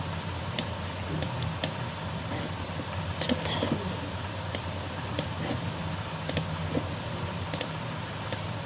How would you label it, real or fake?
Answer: real